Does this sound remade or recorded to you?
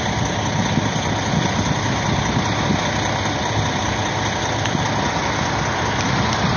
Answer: recorded